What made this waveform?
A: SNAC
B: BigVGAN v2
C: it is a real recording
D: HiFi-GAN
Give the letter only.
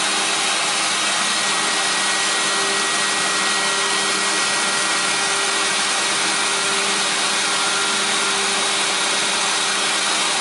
C